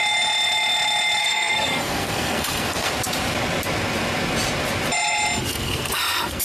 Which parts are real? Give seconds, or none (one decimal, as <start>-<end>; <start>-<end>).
0.0-1.2; 2.9-5.5